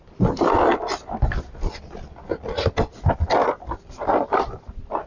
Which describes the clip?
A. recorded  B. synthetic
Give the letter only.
A